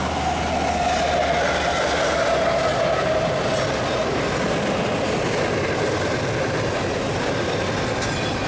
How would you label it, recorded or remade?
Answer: recorded